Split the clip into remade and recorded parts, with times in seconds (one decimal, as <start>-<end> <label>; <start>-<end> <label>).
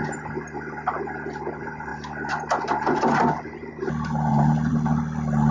0.0-5.5 recorded